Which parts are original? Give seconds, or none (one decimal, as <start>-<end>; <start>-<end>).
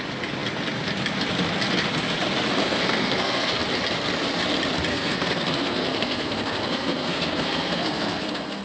0.0-2.6; 3.5-4.9